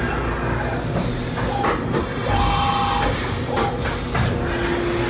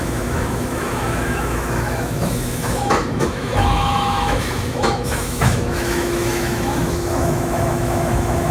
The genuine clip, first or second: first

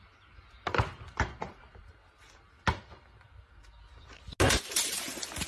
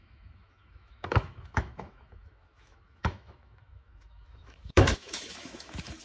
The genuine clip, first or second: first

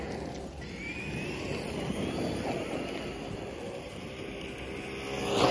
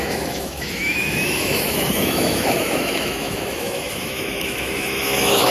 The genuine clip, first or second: first